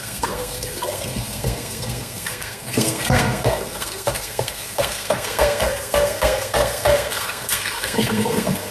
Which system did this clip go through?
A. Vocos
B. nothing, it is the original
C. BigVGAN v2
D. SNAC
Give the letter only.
D